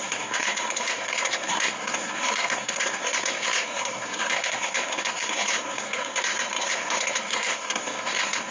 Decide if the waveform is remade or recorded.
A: remade